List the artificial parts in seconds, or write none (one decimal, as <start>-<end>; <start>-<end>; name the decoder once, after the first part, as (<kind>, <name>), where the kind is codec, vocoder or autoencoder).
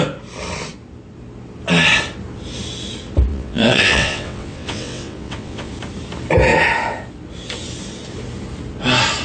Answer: 3.3-5.7 (vocoder, WaveNeXt)